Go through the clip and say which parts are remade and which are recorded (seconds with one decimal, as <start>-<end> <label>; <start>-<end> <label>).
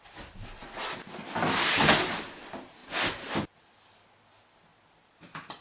0.0-2.8 recorded; 2.8-3.6 remade; 3.6-4.7 recorded; 4.7-5.6 remade